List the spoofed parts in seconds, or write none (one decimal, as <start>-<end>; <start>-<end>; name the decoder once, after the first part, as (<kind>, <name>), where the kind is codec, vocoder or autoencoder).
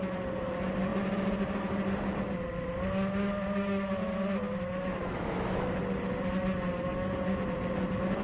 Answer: 5.0-5.8 (autoencoder, DAC-VAE)